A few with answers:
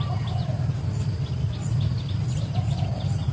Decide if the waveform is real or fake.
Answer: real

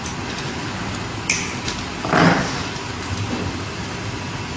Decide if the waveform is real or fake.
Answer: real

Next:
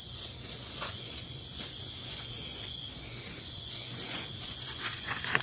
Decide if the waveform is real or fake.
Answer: fake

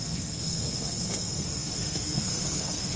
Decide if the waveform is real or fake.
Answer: fake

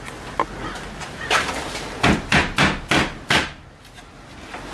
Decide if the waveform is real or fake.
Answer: real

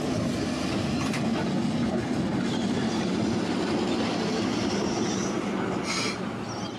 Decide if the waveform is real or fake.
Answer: real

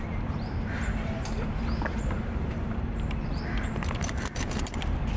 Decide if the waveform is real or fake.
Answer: fake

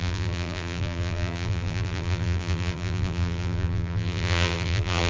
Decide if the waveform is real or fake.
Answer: fake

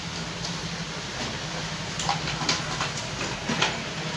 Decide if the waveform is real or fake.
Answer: real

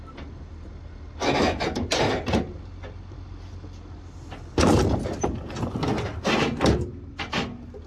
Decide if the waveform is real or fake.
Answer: real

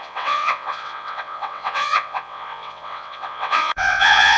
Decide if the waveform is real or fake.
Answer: fake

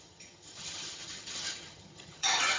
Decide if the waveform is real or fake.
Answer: fake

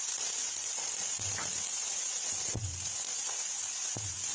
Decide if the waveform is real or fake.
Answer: fake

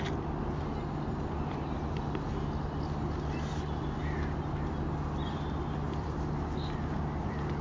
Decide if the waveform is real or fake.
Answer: real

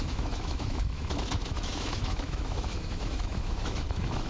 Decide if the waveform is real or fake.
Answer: fake